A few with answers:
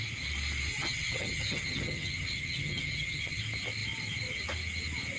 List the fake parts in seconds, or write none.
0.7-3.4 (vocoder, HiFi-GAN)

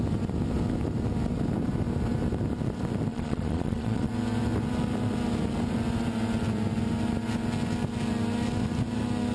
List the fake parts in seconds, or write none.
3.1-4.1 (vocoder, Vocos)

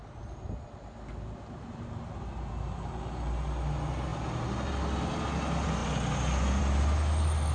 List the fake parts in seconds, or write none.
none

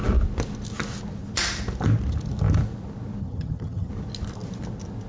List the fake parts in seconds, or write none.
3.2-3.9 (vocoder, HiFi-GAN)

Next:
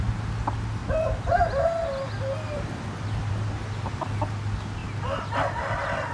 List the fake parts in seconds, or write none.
none

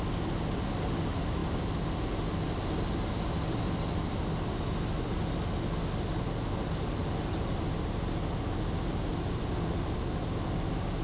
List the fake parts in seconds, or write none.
7.0-8.0 (vocoder, BigVGAN v2)